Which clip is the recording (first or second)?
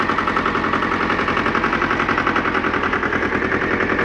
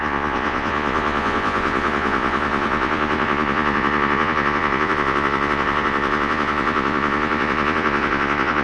first